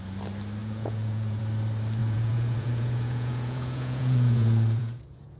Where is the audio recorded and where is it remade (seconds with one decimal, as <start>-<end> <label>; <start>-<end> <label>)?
0.0-0.6 recorded; 0.6-1.4 remade; 1.4-2.0 recorded; 2.0-5.4 remade